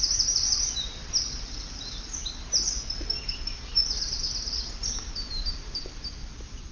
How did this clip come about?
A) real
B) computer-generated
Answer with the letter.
A